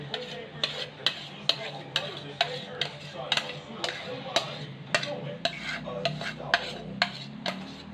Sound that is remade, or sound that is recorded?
recorded